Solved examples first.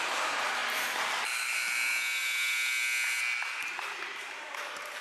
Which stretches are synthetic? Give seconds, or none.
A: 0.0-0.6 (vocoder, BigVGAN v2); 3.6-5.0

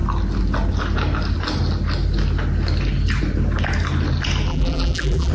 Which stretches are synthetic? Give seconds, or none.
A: 4.5-5.3 (vocoder, BigVGAN v2)

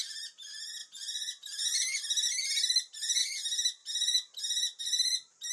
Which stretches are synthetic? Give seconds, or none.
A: 0.8-3.2 (vocoder, BigVGAN v2)

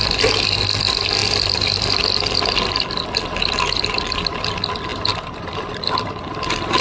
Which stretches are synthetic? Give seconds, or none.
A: none